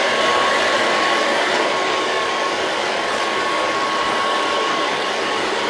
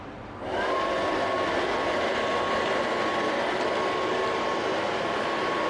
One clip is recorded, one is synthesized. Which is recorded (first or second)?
second